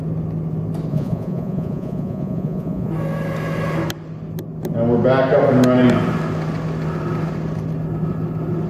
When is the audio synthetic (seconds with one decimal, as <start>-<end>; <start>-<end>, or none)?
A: 0.9-2.9